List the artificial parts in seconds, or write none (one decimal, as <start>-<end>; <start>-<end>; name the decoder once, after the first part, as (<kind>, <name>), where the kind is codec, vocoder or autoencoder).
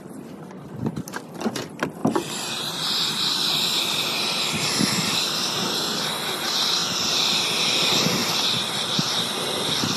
2.0-4.8 (vocoder, BigVGAN v2); 6.8-7.4